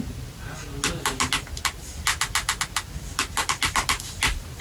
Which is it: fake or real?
real